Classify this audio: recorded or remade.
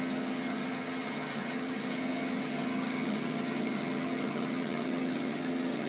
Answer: remade